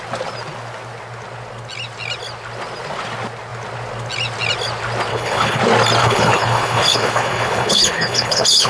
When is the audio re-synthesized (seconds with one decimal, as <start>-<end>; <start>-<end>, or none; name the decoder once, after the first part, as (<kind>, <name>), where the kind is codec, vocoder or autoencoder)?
5.1-5.6 (codec, HILCodec); 6.0-8.7